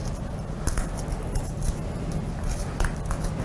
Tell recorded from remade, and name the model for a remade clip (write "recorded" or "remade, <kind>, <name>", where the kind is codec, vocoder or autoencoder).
recorded